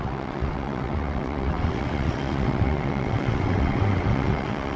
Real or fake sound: fake